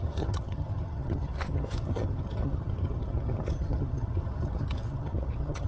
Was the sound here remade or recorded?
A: remade